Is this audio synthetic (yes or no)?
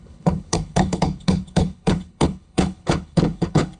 yes